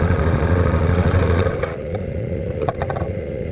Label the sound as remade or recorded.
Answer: remade